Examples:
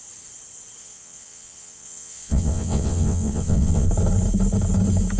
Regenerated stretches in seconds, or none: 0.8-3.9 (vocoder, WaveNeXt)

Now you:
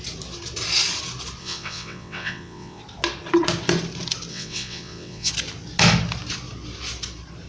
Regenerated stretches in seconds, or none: 1.4-2.8 (vocoder, WaveNeXt); 4.3-5.3

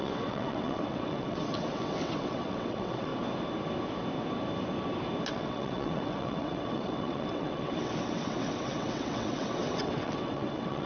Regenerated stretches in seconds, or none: 0.0-3.1 (vocoder, WaveNeXt); 5.3-10.9